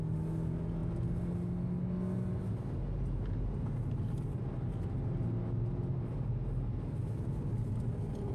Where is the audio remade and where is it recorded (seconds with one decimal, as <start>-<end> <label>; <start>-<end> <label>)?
0.0-8.3 recorded